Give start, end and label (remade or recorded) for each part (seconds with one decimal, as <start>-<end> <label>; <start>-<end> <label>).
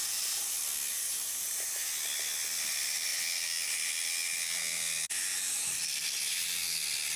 0.0-0.5 remade; 0.5-0.9 recorded; 0.9-1.7 remade; 1.7-7.2 recorded